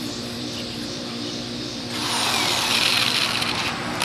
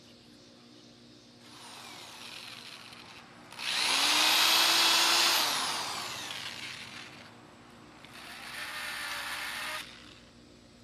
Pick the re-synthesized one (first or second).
first